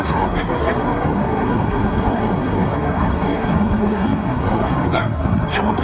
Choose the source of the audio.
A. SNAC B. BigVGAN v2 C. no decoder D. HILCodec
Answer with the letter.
A